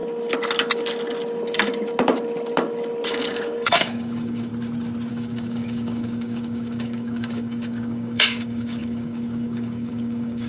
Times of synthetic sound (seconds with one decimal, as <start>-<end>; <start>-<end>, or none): 3.1-4.5; 5.1-10.5